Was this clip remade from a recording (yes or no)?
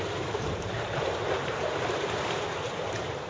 yes